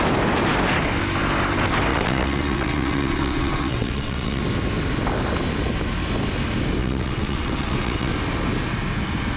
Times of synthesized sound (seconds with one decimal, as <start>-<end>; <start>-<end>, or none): 1.9-4.4; 6.8-8.1